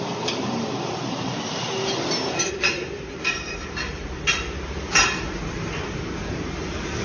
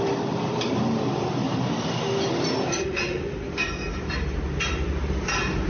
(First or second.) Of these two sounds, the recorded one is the second